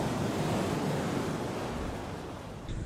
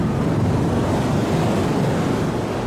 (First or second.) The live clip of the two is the second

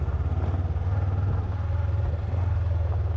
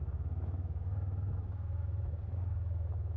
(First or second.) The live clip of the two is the first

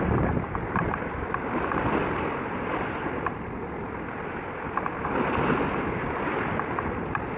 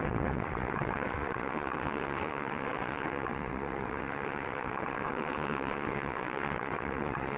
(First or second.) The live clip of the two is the first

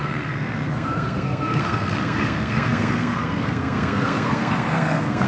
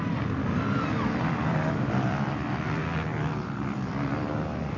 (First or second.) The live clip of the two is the second